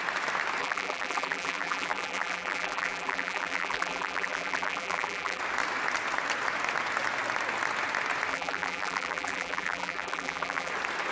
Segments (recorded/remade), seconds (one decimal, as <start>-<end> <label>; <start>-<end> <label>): 0.0-0.6 recorded; 0.6-5.4 remade; 5.4-8.3 recorded; 8.3-10.7 remade; 10.7-11.1 recorded